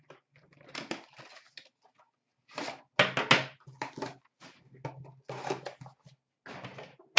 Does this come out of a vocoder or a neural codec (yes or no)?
no